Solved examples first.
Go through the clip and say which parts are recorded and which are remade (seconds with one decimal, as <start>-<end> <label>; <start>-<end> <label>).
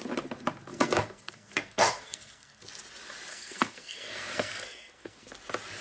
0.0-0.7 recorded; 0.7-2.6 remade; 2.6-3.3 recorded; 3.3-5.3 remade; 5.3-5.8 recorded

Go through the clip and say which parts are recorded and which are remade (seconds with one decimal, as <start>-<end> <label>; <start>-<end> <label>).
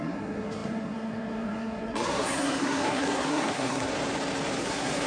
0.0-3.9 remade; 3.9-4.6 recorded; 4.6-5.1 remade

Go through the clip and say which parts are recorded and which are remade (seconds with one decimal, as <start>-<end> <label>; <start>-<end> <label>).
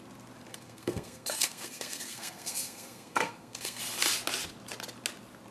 0.0-0.5 recorded; 0.5-3.8 remade; 3.8-5.5 recorded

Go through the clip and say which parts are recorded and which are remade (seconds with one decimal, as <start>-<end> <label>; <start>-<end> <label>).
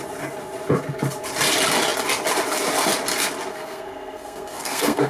0.0-3.5 recorded; 3.5-5.1 remade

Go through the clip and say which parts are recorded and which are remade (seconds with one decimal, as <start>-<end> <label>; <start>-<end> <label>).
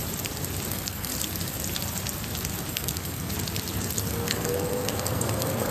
0.0-0.7 recorded; 0.7-1.1 remade; 1.1-2.7 recorded; 2.7-3.3 remade; 3.3-4.1 recorded; 4.1-5.7 remade